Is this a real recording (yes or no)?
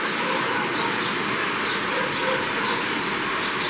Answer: yes